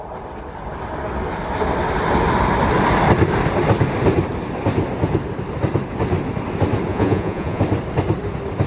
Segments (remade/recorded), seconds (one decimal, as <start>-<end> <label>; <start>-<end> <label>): 0.0-6.9 recorded; 6.9-7.6 remade; 7.6-8.7 recorded